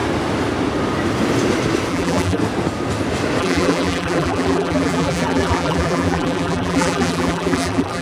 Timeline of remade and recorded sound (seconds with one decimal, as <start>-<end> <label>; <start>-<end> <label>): 0.0-1.9 recorded; 1.9-2.4 remade; 2.4-3.4 recorded; 3.4-8.0 remade